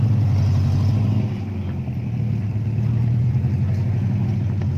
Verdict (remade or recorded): recorded